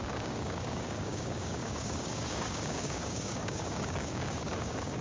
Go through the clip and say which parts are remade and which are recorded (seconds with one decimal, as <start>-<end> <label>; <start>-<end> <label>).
0.0-5.0 remade